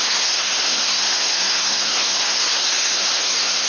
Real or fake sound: fake